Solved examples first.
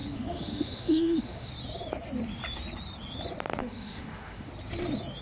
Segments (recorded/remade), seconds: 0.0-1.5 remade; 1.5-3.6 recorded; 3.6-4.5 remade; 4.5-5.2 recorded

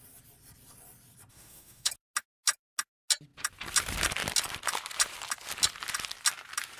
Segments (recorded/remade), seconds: 0.0-1.3 recorded; 1.3-1.9 remade; 1.9-6.8 recorded

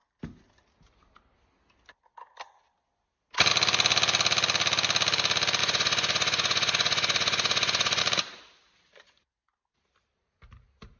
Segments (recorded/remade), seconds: 0.0-5.6 recorded; 5.6-8.0 remade; 8.0-11.0 recorded

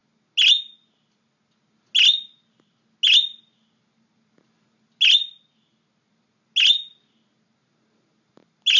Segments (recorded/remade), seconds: 0.0-8.8 recorded